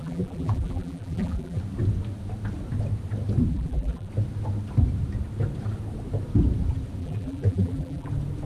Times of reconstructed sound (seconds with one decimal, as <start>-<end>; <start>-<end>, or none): 0.0-1.6; 3.5-4.1; 7.0-8.1